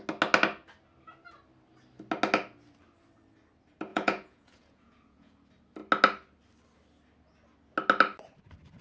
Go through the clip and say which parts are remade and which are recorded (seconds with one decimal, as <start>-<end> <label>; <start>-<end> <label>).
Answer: 0.0-3.9 recorded; 3.9-5.3 remade; 5.3-8.8 recorded